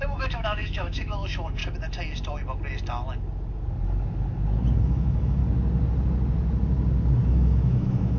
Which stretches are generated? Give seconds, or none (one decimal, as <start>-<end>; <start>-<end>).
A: 0.0-1.6; 4.8-5.4; 7.3-8.2